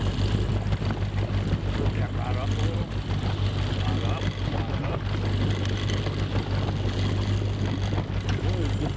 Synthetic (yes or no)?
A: no